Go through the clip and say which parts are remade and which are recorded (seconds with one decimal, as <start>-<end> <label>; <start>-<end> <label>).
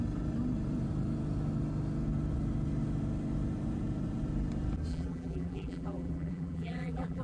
0.0-4.9 recorded; 4.9-7.2 remade